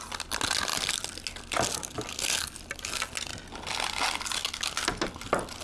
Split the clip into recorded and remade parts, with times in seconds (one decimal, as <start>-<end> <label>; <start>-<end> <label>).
0.0-5.6 recorded